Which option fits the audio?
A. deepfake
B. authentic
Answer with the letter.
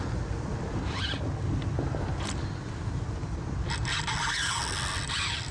B